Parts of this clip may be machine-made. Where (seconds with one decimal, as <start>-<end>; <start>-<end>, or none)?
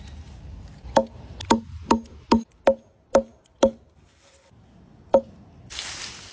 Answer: none